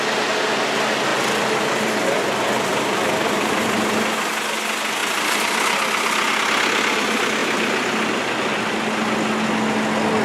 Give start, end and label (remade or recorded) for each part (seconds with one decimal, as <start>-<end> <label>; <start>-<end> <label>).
0.0-1.1 recorded; 1.1-2.2 remade; 2.2-2.7 recorded; 2.7-4.3 remade; 4.3-5.0 recorded; 5.0-6.3 remade; 6.3-10.2 recorded